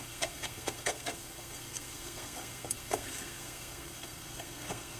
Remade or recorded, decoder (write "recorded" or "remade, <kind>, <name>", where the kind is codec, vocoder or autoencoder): remade, codec, SNAC